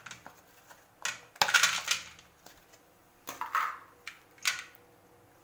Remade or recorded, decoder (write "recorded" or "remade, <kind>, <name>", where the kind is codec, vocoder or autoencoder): recorded